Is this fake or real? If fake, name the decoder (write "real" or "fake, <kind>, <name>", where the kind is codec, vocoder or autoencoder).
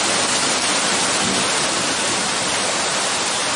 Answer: real